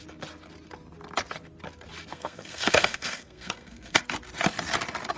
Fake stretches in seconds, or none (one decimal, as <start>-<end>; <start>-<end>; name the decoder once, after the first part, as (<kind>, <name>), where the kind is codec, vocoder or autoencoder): 2.1-4.0 (codec, SNAC)